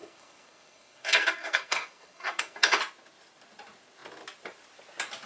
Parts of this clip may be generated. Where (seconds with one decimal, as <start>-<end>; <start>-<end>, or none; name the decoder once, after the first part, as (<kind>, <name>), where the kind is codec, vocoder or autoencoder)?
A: 0.0-2.8 (codec, SNAC)